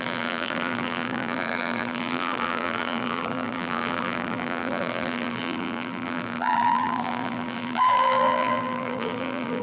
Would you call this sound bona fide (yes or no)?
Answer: no